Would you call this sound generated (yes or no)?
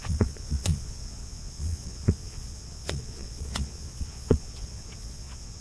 yes